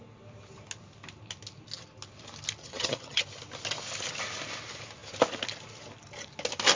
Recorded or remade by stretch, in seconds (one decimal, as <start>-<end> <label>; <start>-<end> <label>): 0.0-2.6 recorded; 2.6-3.2 remade; 3.2-6.8 recorded